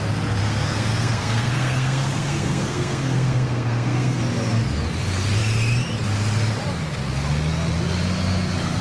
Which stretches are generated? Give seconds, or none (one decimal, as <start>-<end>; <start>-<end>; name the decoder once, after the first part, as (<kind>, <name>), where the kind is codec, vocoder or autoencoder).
0.4-4.2 (codec, SNAC)